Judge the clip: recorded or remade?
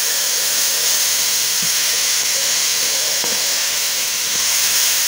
remade